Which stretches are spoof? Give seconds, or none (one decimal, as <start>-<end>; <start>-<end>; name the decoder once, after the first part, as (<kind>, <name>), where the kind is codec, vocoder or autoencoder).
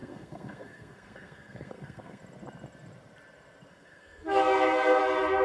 0.0-2.2 (codec, SNAC); 3.7-5.0